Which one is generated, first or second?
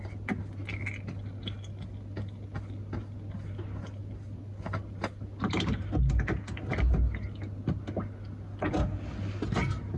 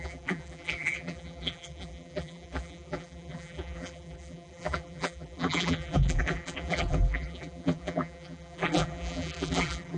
second